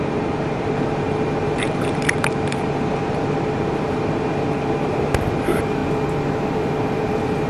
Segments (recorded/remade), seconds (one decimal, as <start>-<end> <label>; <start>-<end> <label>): 0.0-5.8 remade; 5.8-6.6 recorded; 6.6-7.5 remade